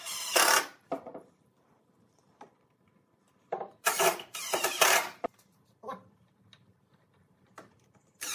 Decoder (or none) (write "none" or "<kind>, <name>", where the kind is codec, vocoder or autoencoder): vocoder, BigVGAN v2